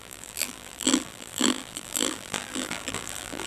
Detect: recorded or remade remade